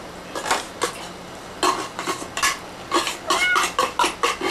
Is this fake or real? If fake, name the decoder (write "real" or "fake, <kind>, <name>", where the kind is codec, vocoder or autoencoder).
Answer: real